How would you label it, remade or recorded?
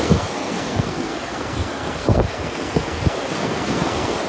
remade